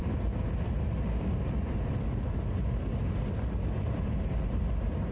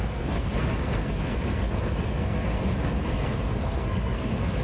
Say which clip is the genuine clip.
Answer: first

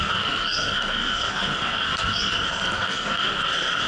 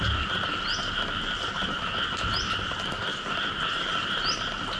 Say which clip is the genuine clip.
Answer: second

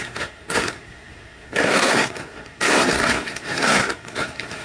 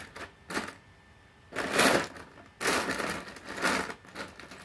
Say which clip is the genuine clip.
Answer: second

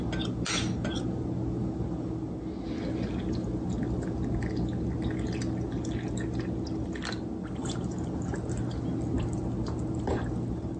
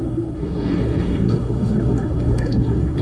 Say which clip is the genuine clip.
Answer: first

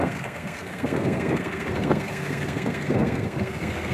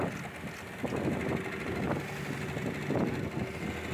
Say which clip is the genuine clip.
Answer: second